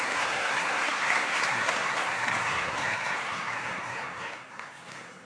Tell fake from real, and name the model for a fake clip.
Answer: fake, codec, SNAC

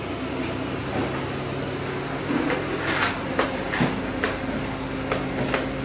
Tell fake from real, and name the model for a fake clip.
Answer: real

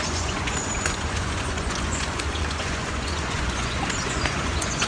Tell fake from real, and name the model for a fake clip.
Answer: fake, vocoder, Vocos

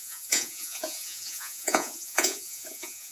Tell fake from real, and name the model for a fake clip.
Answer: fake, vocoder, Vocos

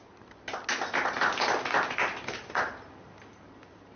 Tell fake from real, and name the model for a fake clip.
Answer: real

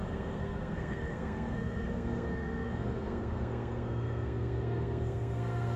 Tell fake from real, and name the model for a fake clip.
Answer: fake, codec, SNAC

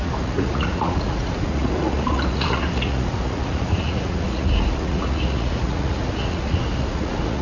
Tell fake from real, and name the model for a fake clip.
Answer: fake, vocoder, Vocos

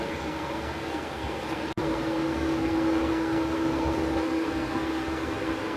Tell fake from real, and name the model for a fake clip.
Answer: fake, codec, SNAC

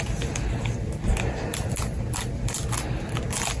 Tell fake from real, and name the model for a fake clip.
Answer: real